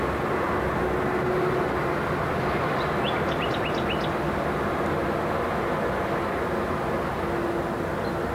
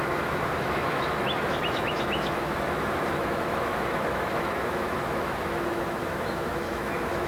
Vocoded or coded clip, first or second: second